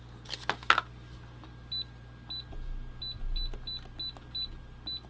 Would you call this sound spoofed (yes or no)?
no